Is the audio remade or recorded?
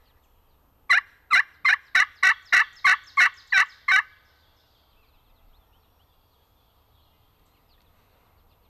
recorded